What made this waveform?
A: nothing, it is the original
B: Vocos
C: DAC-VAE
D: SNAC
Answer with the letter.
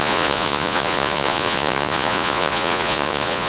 B